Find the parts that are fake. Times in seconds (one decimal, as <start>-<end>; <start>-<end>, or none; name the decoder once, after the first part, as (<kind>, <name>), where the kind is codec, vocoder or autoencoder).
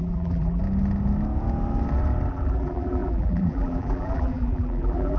0.0-0.6 (vocoder, BigVGAN v2); 2.3-5.2